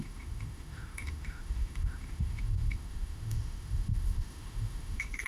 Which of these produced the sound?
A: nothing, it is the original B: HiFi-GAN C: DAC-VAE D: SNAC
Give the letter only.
C